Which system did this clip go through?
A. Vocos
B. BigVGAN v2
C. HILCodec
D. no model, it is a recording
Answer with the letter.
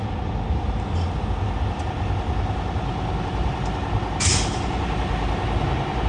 D